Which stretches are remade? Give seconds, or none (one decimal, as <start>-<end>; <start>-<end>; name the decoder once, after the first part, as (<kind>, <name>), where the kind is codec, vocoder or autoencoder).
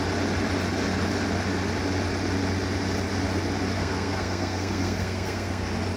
3.7-5.6 (codec, SNAC)